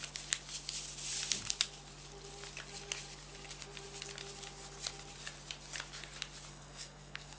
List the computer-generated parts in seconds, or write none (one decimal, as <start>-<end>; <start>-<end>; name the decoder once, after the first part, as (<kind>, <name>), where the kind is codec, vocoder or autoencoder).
6.5-7.4 (codec, SNAC)